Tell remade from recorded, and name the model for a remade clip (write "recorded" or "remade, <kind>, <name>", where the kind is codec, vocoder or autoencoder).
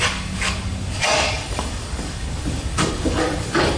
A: remade, codec, DAC